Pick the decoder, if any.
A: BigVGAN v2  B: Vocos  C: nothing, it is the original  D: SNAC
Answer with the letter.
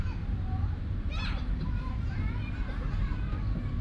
A